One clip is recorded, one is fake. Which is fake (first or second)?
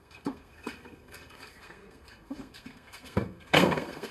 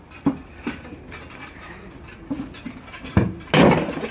first